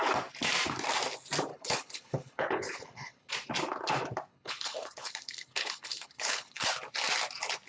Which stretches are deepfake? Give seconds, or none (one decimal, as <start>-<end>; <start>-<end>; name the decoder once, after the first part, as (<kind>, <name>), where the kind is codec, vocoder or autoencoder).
1.5-3.3 (codec, HILCodec); 4.3-6.7